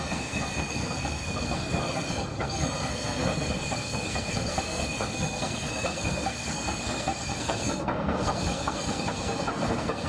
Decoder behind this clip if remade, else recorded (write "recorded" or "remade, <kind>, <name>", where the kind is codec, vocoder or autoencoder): remade, codec, SNAC